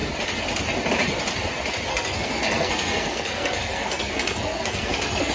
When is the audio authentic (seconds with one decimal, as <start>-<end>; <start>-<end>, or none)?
0.0-1.9